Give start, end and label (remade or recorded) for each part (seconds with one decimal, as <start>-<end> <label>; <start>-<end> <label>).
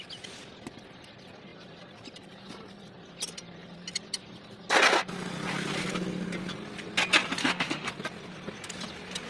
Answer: 0.0-7.4 recorded; 7.4-7.9 remade; 7.9-9.3 recorded